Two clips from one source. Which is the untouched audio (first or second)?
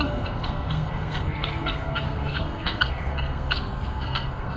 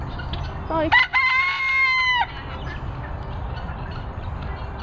second